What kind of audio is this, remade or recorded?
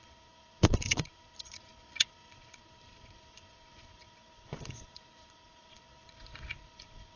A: remade